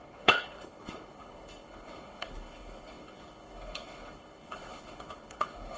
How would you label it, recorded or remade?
remade